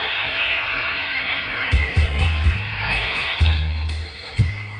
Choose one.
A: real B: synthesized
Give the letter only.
B